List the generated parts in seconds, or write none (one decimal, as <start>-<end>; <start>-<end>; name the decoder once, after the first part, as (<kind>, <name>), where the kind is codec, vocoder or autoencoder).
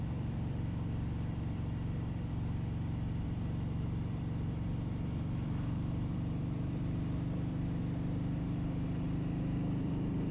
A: 0.0-7.8 (vocoder, BigVGAN v2); 9.3-10.3